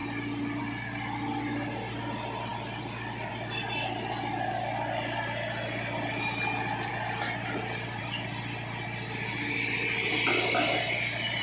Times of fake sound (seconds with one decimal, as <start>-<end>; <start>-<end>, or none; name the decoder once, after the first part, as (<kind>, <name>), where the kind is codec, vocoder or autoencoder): none